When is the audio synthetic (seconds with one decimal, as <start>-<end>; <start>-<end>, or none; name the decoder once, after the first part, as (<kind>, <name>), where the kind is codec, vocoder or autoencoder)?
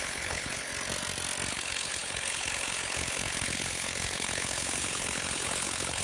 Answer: 0.0-0.7 (codec, HILCodec); 1.5-6.0